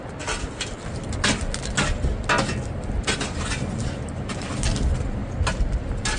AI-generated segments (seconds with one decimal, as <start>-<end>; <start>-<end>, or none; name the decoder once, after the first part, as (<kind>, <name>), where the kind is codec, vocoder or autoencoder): none